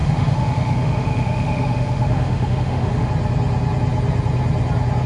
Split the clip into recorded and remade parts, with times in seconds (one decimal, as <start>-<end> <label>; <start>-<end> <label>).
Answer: 0.0-3.1 remade; 3.1-5.1 recorded